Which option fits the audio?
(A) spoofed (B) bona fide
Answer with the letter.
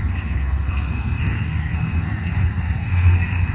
A